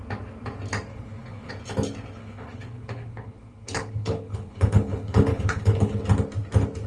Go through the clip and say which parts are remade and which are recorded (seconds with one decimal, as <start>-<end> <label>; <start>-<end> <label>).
0.0-0.9 recorded; 0.9-1.5 remade; 1.5-2.2 recorded; 2.2-6.0 remade; 6.0-6.9 recorded